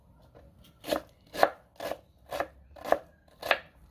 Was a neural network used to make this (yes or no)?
no